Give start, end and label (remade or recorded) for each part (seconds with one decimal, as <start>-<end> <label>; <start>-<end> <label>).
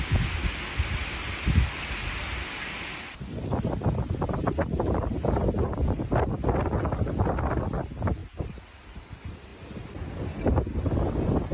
0.0-11.5 recorded